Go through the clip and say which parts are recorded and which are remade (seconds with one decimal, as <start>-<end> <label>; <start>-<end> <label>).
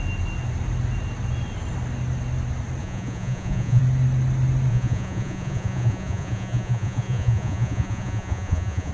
0.0-2.8 recorded; 2.8-3.8 remade; 3.8-4.7 recorded; 4.7-8.9 remade